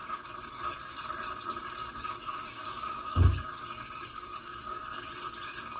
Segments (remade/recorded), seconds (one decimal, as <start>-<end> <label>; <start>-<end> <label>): 0.0-1.8 recorded; 1.8-5.1 remade; 5.1-5.8 recorded